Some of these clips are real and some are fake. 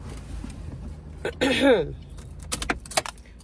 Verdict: real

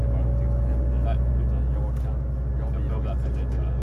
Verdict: real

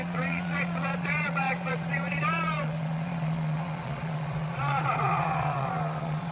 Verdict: fake